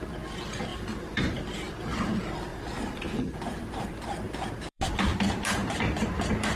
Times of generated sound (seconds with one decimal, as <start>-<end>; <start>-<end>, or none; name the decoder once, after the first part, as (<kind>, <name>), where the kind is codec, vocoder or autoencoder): 0.7-1.4 (vocoder, BigVGAN v2); 2.5-4.9